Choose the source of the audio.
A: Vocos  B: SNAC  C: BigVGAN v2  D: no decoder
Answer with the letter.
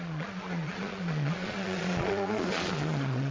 A